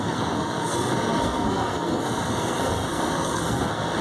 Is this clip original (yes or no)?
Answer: no